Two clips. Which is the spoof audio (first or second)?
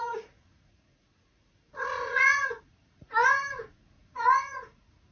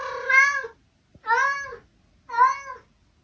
first